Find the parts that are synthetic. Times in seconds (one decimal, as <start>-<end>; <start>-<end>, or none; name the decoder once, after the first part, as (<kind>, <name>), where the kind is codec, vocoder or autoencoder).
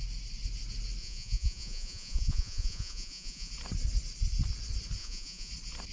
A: 1.0-3.5 (vocoder, Vocos); 5.0-5.5